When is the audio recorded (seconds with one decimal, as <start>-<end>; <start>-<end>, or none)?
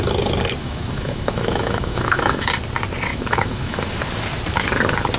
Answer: 0.0-0.6; 2.5-3.1; 3.8-5.2